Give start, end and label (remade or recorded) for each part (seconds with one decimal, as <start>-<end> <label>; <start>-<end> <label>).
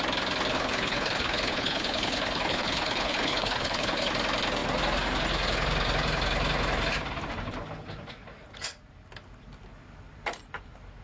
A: 0.0-0.5 recorded; 0.5-4.1 remade; 4.1-11.0 recorded